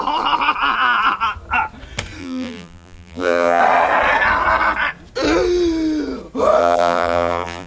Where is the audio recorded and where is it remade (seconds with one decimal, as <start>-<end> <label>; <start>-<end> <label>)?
0.0-2.2 recorded; 2.2-3.6 remade; 3.6-6.6 recorded; 6.6-7.7 remade